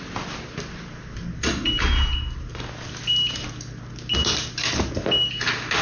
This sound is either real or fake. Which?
real